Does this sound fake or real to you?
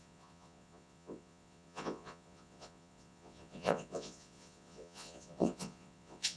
fake